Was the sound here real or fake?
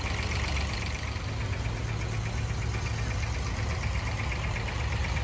real